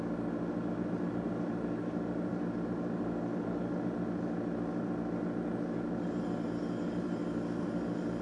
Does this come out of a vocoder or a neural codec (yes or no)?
no